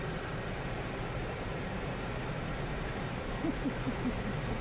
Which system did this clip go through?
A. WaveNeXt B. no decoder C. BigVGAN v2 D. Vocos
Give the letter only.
B